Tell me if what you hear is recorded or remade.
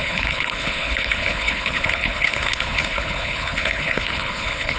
remade